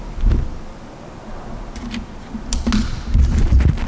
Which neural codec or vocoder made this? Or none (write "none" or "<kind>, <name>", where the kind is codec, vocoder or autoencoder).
none